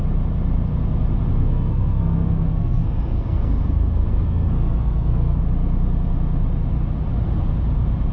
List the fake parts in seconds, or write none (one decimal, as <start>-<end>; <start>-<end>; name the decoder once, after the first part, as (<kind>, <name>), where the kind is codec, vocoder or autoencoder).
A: 1.4-5.4 (codec, SNAC)

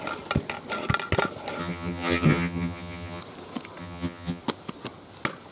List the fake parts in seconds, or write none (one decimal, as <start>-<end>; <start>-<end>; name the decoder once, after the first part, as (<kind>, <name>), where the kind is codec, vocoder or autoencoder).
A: 1.6-3.2 (vocoder, HiFi-GAN); 3.8-4.4

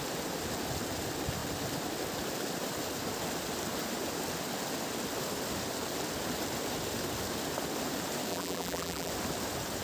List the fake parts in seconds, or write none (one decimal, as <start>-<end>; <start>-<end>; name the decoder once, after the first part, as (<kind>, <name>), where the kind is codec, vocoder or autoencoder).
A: 8.3-9.1 (vocoder, BigVGAN v2)